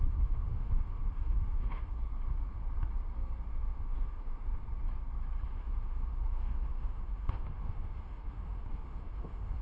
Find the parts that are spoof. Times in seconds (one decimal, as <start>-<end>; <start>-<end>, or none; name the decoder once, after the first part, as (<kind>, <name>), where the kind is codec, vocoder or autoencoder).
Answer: 0.0-2.1 (autoencoder, DAC-VAE); 3.6-4.6; 5.5-9.6